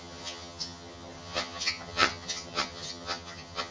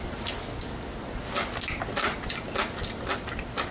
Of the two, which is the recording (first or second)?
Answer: second